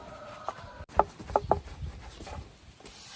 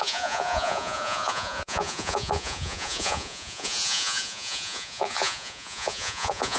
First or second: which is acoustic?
first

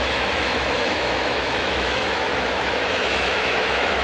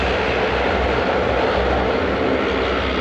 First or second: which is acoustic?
second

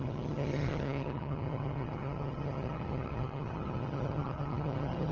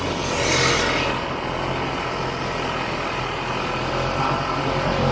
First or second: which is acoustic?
second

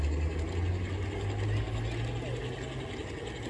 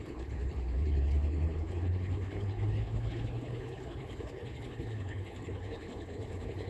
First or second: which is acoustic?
first